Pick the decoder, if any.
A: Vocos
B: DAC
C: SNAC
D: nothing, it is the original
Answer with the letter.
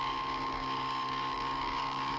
B